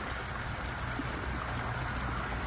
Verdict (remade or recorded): recorded